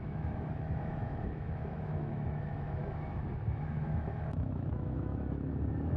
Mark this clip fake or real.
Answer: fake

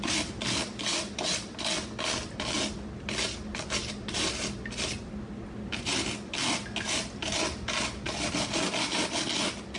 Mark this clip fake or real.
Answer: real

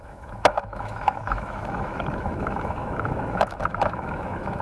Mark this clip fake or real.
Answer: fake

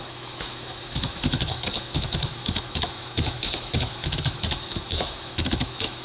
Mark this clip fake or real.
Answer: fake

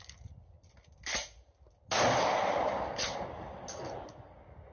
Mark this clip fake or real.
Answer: real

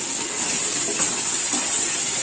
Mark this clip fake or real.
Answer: real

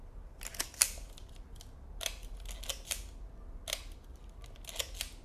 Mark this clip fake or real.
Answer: real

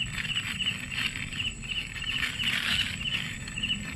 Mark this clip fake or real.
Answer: real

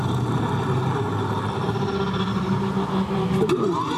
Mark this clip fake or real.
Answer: real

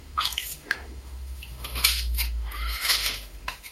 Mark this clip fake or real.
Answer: fake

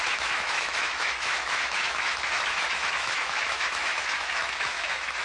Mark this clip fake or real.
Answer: fake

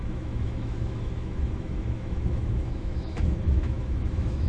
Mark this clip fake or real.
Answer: fake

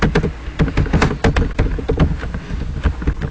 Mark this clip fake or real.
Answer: real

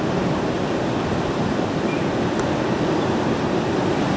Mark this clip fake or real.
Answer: real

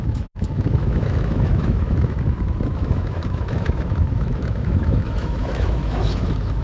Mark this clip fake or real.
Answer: fake